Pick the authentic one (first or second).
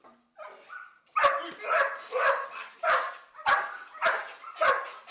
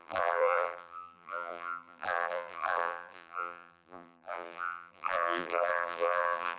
first